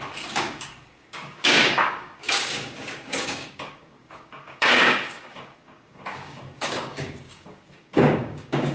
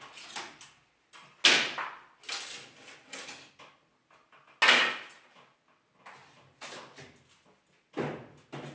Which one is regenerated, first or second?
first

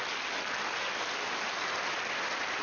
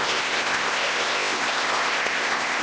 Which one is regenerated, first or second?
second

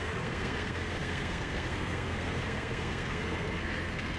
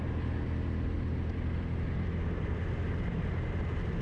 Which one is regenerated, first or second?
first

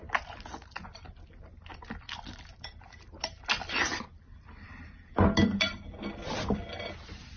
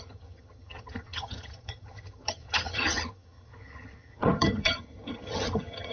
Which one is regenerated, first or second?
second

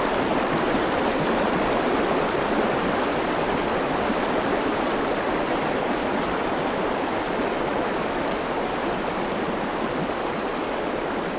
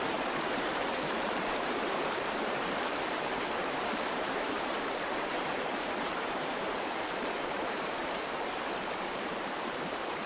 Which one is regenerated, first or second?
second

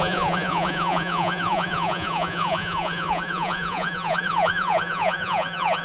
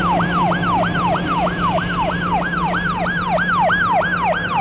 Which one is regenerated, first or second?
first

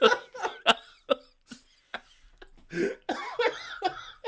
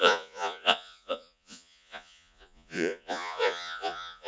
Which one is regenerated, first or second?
second